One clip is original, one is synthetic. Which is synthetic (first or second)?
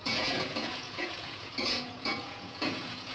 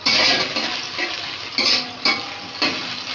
first